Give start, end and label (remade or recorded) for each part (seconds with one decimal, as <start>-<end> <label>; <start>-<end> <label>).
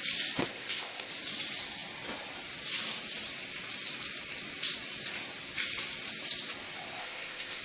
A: 0.0-0.5 recorded; 0.5-1.1 remade; 1.1-7.0 recorded; 7.0-7.6 remade